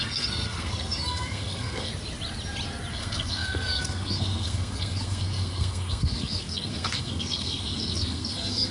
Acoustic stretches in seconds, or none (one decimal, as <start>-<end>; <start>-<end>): 1.9-2.9